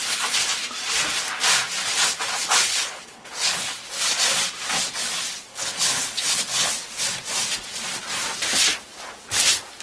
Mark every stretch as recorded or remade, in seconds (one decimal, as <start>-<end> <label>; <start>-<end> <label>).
0.0-2.4 recorded; 2.4-3.8 remade; 3.8-5.5 recorded; 5.5-6.7 remade; 6.7-9.8 recorded